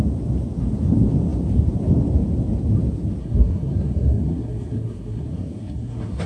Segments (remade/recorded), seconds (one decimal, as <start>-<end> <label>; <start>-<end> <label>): 0.0-3.2 recorded; 3.2-6.3 remade